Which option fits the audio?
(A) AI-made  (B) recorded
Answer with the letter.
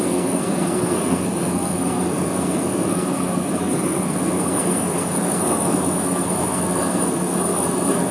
A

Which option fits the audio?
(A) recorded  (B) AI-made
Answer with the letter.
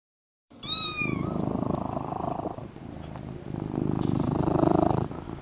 B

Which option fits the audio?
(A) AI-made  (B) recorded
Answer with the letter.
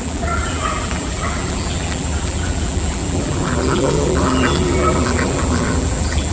A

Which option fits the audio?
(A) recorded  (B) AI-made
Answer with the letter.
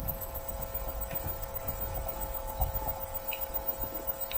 B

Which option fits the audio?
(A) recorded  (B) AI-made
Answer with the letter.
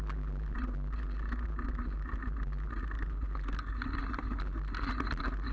A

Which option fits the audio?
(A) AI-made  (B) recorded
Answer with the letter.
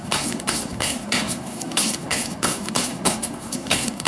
A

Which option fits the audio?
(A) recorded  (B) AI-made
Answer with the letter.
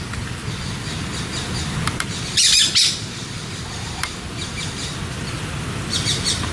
A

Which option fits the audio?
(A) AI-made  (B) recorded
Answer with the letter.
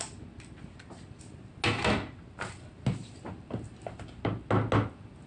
B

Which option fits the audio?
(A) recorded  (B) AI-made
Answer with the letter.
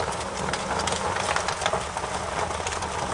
A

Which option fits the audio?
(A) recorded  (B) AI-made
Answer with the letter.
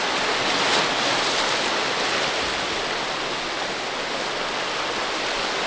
A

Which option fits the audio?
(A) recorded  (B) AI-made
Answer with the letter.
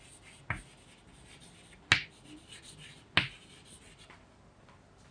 A